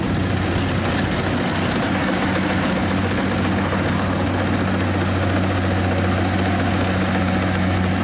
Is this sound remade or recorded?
recorded